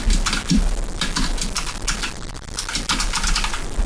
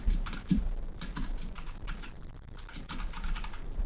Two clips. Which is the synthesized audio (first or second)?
second